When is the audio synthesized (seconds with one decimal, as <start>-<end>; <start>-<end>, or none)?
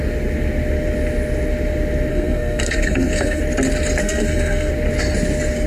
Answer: 2.1-3.4; 4.0-4.7